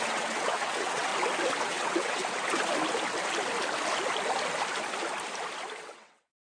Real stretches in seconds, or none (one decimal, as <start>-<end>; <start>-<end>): 1.1-1.6; 2.2-5.8